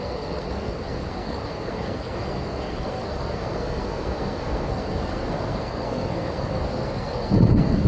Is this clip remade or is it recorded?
remade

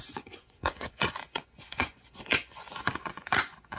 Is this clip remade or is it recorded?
remade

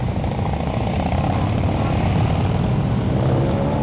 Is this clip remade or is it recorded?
recorded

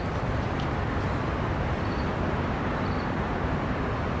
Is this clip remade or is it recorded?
recorded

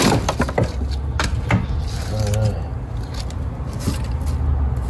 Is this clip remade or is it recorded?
recorded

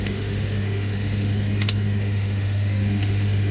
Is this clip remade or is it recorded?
remade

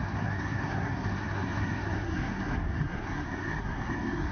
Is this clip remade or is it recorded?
remade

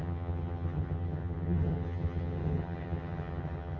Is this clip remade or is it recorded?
remade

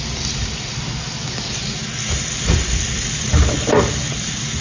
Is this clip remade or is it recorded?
recorded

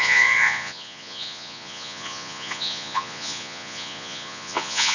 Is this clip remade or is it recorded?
remade